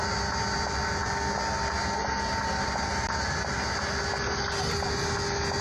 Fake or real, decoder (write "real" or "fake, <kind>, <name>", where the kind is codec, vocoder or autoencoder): real